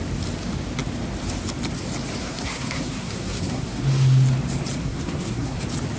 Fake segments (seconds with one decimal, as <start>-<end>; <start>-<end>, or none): 2.2-3.8; 4.8-5.6